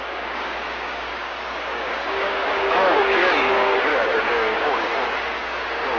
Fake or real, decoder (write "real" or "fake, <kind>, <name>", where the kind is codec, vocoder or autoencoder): fake, codec, DAC